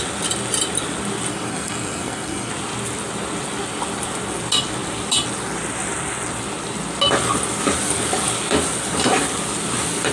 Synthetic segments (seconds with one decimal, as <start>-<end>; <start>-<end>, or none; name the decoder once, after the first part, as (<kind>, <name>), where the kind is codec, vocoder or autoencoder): 1.3-2.5 (codec, SNAC)